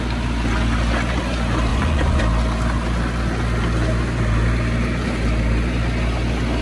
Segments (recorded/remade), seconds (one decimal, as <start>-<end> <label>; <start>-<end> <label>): 0.0-1.7 recorded; 1.7-2.2 remade; 2.2-6.6 recorded